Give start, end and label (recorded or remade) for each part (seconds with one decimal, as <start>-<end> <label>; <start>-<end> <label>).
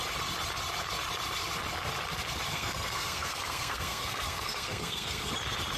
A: 0.0-2.5 recorded; 2.5-5.3 remade; 5.3-5.8 recorded